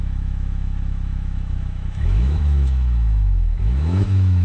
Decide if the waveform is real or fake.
fake